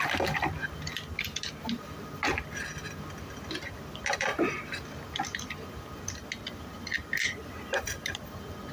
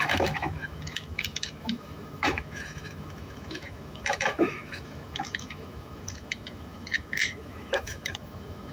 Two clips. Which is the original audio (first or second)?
first